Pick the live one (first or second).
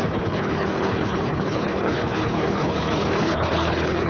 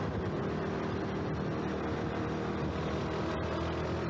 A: second